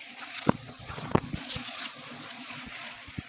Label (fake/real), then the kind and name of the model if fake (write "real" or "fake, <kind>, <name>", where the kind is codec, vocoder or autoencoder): fake, vocoder, Vocos